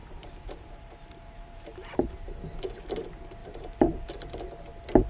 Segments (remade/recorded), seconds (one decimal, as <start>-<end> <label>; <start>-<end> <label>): 0.0-2.4 remade; 2.4-3.4 recorded; 3.4-4.4 remade; 4.4-5.1 recorded